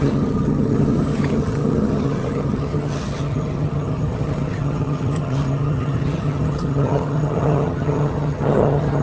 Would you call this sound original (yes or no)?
no